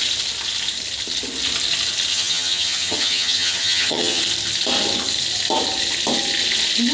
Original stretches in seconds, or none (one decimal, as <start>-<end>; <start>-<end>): 0.0-2.1; 4.2-6.9

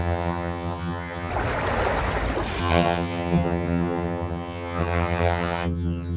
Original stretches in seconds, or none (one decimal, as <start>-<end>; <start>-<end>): 1.3-2.6

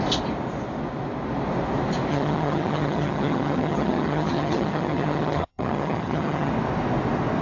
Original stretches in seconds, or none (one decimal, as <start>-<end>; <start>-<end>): 0.0-2.1; 6.5-7.4

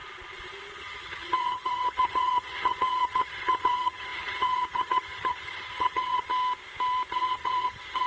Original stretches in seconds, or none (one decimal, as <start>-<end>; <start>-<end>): 0.0-0.8; 6.3-7.1

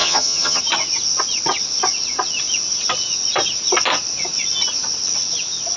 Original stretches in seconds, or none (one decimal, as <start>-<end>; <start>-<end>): 0.6-5.8

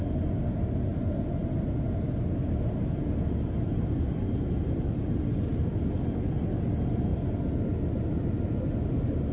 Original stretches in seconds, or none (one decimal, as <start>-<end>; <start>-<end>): 0.0-9.3

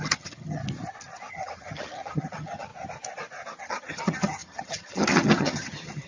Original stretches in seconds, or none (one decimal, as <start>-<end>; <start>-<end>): 0.6-1.3; 2.7-3.6